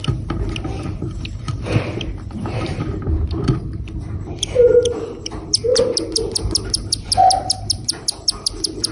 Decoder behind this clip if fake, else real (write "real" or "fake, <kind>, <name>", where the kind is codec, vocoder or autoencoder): fake, vocoder, BigVGAN v2